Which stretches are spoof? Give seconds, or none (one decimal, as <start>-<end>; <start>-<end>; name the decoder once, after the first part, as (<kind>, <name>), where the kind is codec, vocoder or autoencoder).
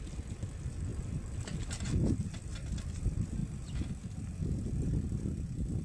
0.0-3.4 (vocoder, BigVGAN v2); 4.2-5.8